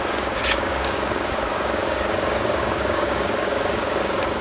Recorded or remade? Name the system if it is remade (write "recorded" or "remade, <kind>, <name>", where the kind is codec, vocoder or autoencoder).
remade, codec, DAC